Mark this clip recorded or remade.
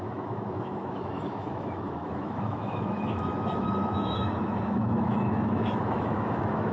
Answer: remade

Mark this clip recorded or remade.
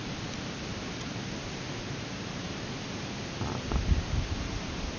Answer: recorded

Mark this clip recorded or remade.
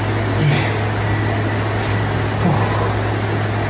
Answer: recorded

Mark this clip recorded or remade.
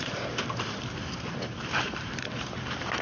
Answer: remade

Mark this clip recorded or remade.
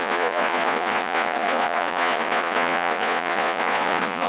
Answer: remade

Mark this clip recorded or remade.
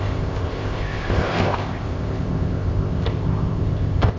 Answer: remade